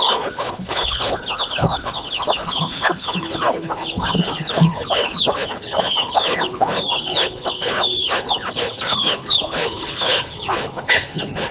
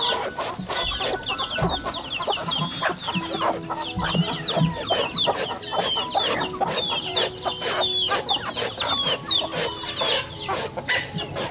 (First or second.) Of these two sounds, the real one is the second